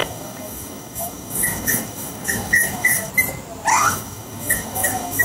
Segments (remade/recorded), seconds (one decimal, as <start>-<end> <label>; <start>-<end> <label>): 0.0-3.1 remade; 3.1-3.7 recorded; 3.7-5.2 remade